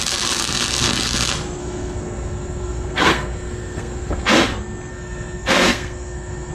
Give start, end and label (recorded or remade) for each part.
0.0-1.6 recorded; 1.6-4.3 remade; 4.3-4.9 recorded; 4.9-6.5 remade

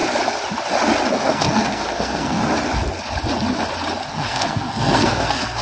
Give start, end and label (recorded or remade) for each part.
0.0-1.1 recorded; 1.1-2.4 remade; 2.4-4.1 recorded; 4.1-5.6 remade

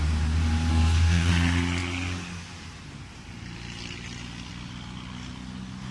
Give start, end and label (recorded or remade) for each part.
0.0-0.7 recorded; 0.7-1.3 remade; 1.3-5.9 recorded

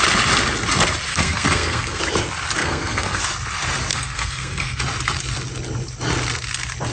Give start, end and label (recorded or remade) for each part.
0.0-1.1 recorded; 1.1-2.0 remade; 2.0-2.6 recorded; 2.6-3.2 remade; 3.2-3.9 recorded; 3.9-4.8 remade; 4.8-6.9 recorded

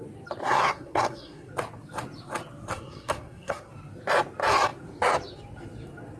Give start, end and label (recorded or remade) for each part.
0.0-0.4 recorded; 0.4-1.5 remade; 1.5-2.7 recorded; 2.7-3.7 remade; 3.7-6.2 recorded

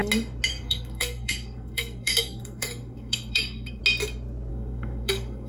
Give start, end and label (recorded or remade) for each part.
0.0-0.5 recorded; 0.5-3.8 remade; 3.8-4.5 recorded; 4.5-5.5 remade

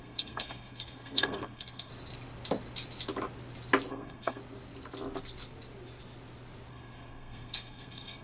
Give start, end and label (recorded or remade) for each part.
0.0-1.9 remade; 1.9-3.9 recorded; 3.9-4.4 remade; 4.4-6.7 recorded; 6.7-8.2 remade

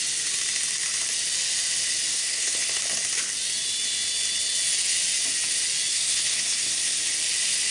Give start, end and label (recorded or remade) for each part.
0.0-2.1 recorded; 2.1-2.8 remade; 2.8-5.9 recorded; 5.9-7.0 remade; 7.0-7.7 recorded